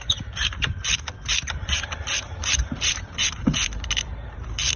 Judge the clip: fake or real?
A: fake